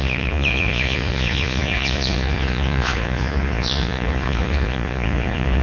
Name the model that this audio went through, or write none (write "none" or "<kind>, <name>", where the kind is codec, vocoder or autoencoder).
vocoder, Vocos